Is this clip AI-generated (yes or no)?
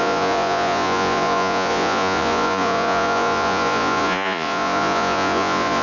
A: yes